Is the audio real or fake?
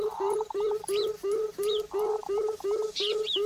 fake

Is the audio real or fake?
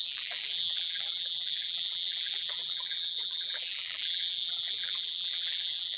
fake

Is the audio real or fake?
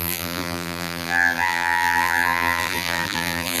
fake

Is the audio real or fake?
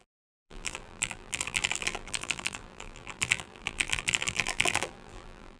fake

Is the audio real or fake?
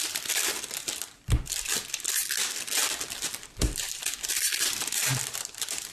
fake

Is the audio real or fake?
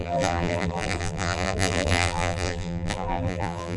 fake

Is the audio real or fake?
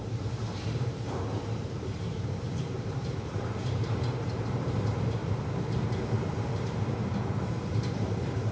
fake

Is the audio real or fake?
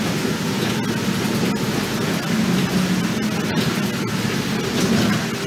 real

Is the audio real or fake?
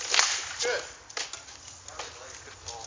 real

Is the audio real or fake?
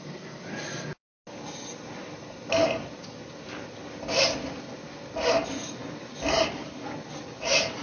real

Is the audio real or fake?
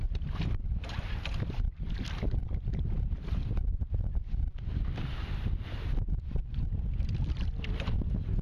fake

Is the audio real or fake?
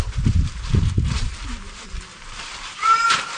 fake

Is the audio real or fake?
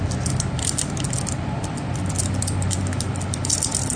fake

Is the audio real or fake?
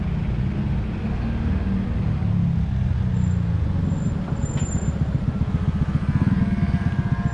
real